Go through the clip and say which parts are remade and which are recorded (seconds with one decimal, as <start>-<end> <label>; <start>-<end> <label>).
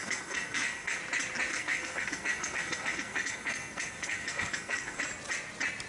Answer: 0.0-1.0 remade; 1.0-1.5 recorded; 1.5-5.0 remade; 5.0-5.9 recorded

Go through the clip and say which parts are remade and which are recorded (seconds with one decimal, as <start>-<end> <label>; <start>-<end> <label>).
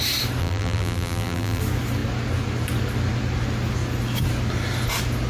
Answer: 0.0-0.4 recorded; 0.4-1.6 remade; 1.6-5.3 recorded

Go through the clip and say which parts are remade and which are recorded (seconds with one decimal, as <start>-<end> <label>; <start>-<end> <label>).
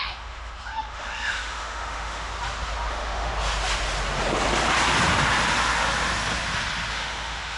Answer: 0.0-2.3 remade; 2.3-2.9 recorded; 2.9-3.3 remade; 3.3-6.9 recorded; 6.9-7.6 remade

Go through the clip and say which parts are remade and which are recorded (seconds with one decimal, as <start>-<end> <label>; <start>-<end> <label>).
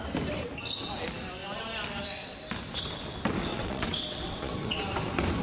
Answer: 0.0-3.5 recorded; 3.5-4.8 remade; 4.8-5.4 recorded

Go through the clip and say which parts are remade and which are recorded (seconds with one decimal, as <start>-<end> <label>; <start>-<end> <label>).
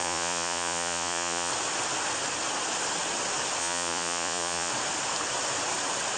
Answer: 0.0-1.5 remade; 1.5-3.6 recorded; 3.6-4.7 remade; 4.7-6.2 recorded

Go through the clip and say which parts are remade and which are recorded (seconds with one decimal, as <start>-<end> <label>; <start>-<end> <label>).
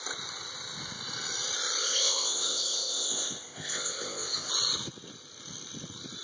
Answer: 0.0-1.8 recorded; 1.8-4.5 remade; 4.5-6.2 recorded